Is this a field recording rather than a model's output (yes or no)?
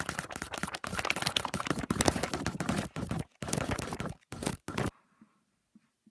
yes